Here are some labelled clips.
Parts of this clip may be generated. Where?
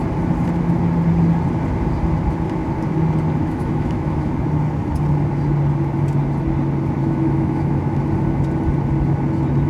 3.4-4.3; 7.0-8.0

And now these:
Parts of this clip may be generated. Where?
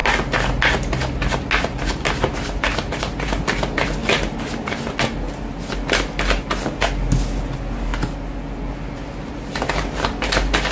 none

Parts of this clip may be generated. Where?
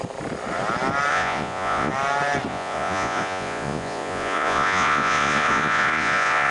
1.1-1.9; 2.5-6.5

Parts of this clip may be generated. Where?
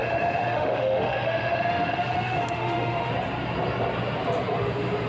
0.0-3.1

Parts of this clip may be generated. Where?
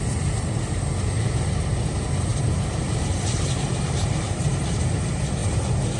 2.3-4.9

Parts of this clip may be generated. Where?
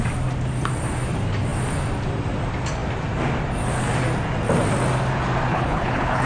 5.5-6.3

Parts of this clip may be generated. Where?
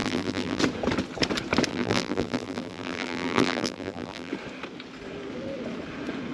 0.0-0.6; 1.7-4.3